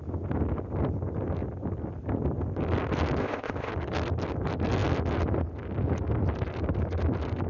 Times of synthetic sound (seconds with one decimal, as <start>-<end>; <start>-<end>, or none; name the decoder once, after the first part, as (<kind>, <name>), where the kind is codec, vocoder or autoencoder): 3.2-3.7 (codec, ZipCodec)